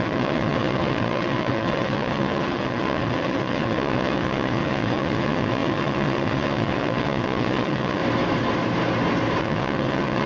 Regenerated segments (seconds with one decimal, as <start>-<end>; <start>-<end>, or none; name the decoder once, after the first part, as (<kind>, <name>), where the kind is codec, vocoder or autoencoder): 0.0-8.0 (vocoder, WaveNeXt); 9.4-10.3